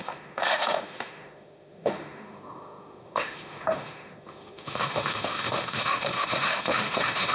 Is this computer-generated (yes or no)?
yes